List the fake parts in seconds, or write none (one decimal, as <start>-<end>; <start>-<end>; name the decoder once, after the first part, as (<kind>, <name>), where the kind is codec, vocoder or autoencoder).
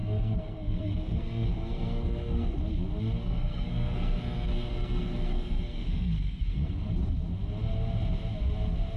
0.0-2.6 (codec, SNAC); 3.2-6.9